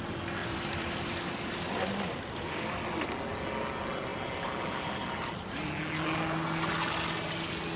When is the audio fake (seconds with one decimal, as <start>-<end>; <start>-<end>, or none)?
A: 0.4-2.9; 4.1-5.8